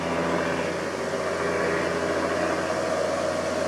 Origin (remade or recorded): recorded